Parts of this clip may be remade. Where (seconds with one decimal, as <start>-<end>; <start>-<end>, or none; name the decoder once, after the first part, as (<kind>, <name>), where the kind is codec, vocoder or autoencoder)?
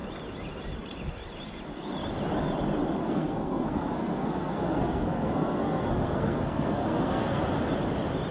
3.0-7.4 (codec, SNAC)